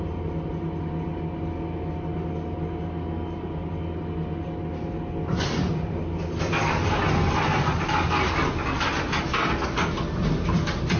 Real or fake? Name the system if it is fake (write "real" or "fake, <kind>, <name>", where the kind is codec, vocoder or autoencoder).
real